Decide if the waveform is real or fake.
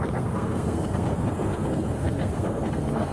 fake